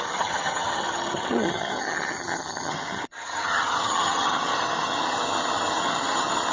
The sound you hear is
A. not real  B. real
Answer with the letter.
A